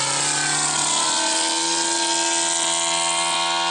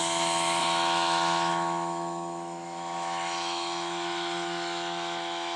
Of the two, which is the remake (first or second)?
second